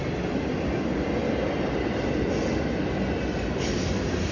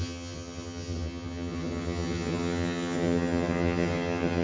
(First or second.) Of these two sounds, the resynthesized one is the second